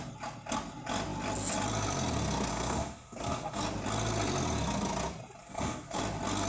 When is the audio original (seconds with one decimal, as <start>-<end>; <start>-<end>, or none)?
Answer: 0.0-2.5; 3.6-5.4; 6.0-6.5